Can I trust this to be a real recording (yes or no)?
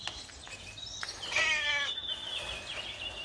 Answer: yes